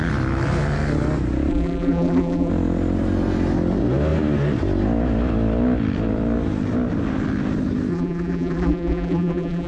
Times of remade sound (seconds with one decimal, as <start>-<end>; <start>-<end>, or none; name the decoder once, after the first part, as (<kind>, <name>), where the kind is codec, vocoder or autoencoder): 1.5-2.5 (vocoder, BigVGAN v2); 7.9-9.7